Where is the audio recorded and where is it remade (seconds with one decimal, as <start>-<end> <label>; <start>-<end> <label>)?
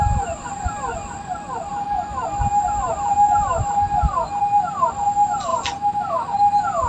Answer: 0.0-6.9 recorded